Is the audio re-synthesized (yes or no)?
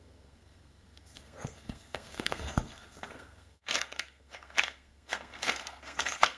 yes